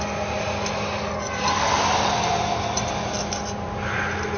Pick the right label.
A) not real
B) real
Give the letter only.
B